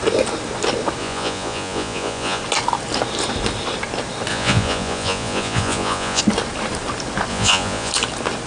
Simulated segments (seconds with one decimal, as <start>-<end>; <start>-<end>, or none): 1.0-2.4; 4.3-6.2; 7.3-7.9